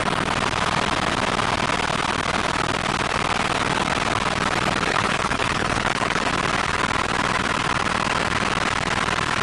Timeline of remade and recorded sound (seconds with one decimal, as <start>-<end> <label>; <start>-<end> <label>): 0.0-4.9 recorded; 4.9-6.3 remade; 6.3-9.4 recorded